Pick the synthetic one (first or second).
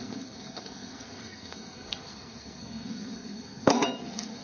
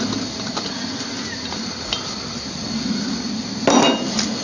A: first